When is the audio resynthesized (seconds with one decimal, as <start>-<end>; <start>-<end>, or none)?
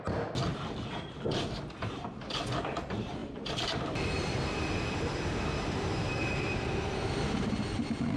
3.2-8.2